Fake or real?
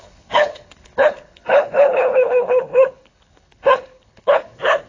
fake